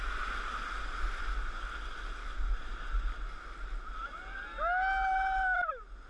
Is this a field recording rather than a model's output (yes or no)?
yes